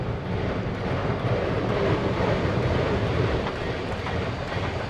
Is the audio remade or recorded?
recorded